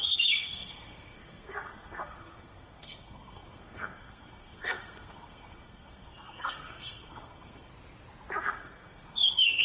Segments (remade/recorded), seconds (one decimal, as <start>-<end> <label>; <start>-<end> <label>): 0.0-7.7 remade; 7.7-8.4 recorded; 8.4-9.6 remade